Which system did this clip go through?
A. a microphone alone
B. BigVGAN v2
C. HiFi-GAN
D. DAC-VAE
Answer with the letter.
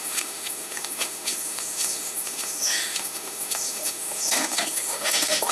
D